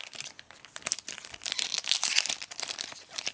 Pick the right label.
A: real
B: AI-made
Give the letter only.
B